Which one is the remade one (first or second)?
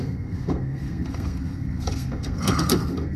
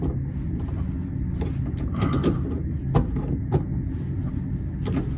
first